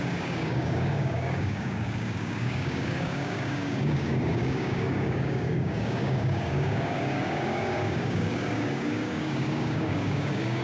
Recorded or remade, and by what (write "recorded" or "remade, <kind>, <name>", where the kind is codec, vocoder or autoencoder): remade, codec, DAC